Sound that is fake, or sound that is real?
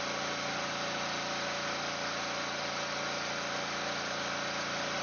real